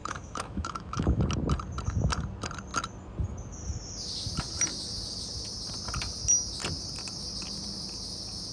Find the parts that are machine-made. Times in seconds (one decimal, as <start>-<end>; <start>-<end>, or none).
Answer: 0.0-1.2